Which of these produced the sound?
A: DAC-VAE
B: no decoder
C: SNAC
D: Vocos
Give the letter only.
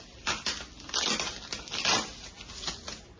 B